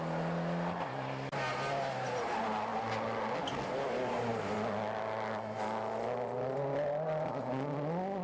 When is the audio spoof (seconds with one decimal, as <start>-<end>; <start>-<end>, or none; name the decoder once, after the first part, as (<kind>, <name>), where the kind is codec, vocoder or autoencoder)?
none